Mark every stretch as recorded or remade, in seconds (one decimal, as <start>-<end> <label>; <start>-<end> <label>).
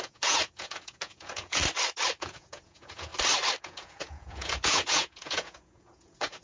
0.0-1.6 remade; 1.6-2.2 recorded; 2.2-3.1 remade; 3.1-3.6 recorded; 3.6-6.4 remade